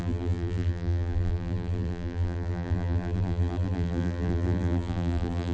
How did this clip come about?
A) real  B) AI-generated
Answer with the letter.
B